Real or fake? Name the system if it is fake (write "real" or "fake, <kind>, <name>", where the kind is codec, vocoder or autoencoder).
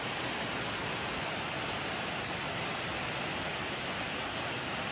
real